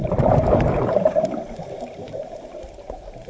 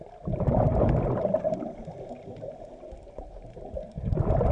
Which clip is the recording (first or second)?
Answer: second